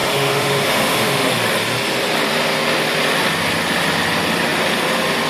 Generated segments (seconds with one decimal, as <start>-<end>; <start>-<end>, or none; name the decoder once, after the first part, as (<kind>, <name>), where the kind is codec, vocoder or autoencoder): 0.0-1.3 (autoencoder, DAC-VAE)